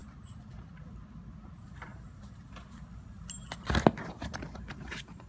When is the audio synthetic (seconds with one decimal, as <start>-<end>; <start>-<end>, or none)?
1.3-1.9; 4.0-5.3